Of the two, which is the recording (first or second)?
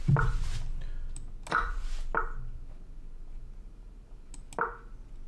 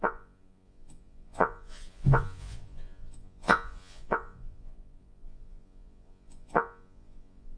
first